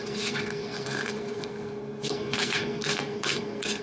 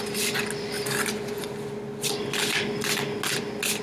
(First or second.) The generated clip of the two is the first